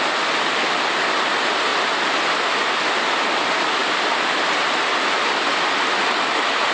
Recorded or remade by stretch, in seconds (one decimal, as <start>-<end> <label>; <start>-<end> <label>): 0.0-1.7 recorded; 1.7-2.2 remade; 2.2-6.7 recorded